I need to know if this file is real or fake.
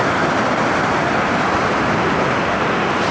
real